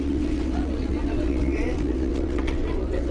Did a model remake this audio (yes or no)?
yes